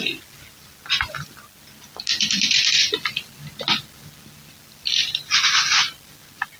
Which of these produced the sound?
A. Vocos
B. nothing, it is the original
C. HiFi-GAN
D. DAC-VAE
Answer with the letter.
B